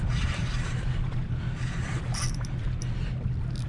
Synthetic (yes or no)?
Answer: no